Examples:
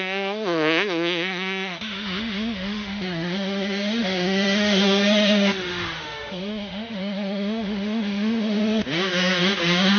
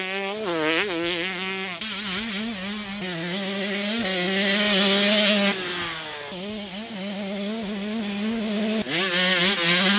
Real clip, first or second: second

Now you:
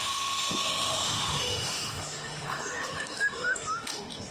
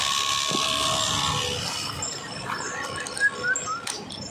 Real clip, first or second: second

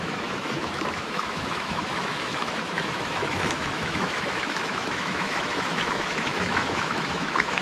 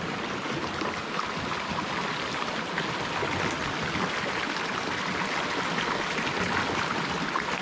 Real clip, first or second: second